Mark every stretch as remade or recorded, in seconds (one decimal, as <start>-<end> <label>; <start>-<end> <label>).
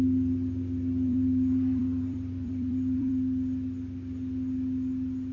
0.0-1.1 recorded; 1.1-3.1 remade; 3.1-5.3 recorded